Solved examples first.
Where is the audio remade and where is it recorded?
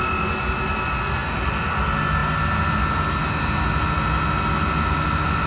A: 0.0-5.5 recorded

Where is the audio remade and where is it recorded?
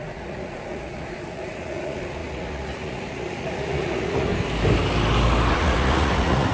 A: 0.0-4.3 remade; 4.3-5.5 recorded; 5.5-6.5 remade